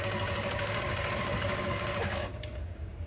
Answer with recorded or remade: remade